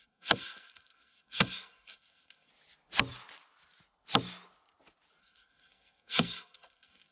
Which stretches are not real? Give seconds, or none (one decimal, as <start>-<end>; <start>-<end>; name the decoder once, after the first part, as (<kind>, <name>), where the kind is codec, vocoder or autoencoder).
0.0-2.5 (codec, SNAC); 5.2-7.1